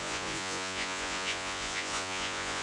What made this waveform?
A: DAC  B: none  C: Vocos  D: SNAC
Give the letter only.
C